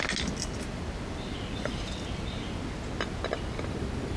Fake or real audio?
real